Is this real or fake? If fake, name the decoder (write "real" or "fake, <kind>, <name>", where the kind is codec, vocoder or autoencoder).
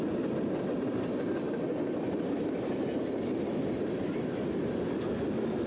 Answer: fake, vocoder, BigVGAN v2